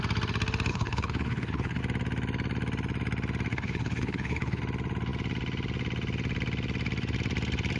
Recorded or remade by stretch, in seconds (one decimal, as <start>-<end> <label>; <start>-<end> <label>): 0.0-0.7 recorded; 0.7-1.8 remade; 1.8-3.5 recorded; 3.5-4.6 remade; 4.6-7.8 recorded